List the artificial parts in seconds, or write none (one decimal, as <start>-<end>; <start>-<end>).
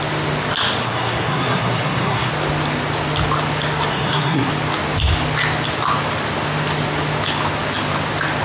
0.8-2.3; 3.9-4.5